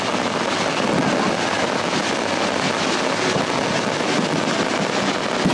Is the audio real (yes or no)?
yes